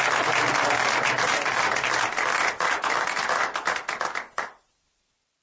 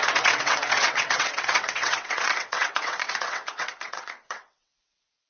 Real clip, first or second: first